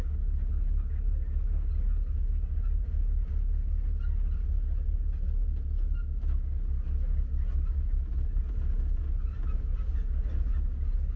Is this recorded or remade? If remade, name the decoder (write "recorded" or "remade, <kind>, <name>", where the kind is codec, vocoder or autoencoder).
recorded